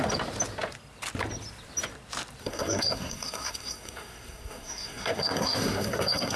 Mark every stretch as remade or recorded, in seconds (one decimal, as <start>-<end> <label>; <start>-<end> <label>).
0.0-2.4 recorded; 2.4-6.4 remade